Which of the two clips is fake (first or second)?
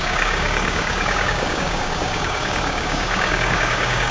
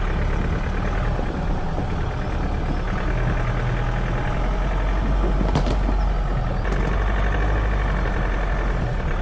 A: first